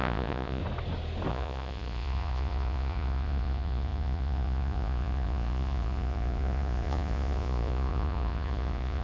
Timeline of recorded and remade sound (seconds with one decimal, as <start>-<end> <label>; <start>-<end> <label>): 0.0-0.6 remade; 0.6-1.3 recorded; 1.3-9.0 remade